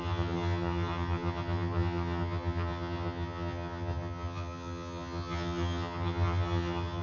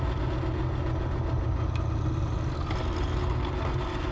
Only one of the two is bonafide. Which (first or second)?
second